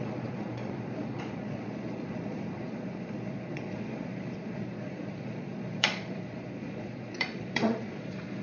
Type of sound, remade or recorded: remade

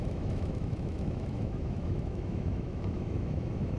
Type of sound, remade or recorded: remade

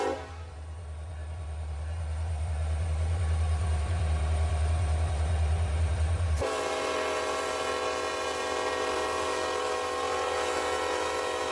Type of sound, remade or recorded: remade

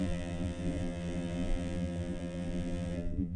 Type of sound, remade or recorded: remade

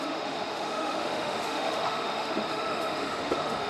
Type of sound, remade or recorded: remade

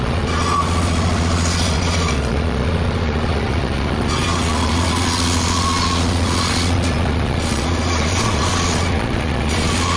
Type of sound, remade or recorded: remade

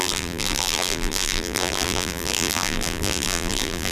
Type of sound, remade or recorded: remade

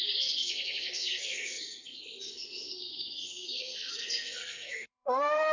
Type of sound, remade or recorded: remade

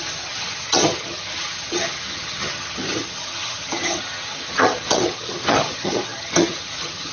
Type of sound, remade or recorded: remade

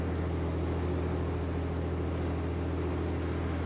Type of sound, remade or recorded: recorded